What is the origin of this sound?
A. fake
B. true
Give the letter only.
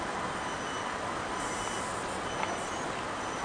B